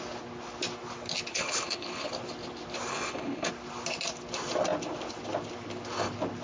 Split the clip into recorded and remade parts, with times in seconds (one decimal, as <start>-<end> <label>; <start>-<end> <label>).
0.0-1.3 recorded; 1.3-2.1 remade; 2.1-2.9 recorded; 2.9-3.5 remade; 3.5-6.4 recorded